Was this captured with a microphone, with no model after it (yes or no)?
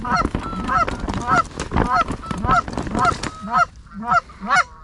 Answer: yes